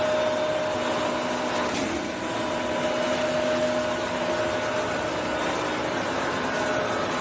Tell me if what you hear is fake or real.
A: real